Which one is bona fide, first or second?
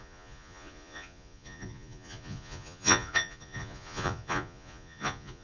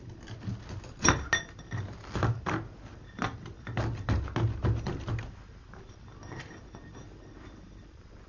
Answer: second